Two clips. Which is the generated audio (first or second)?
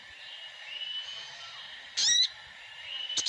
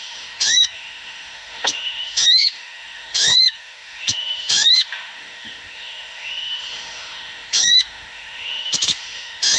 second